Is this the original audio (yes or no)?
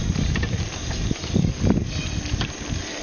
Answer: yes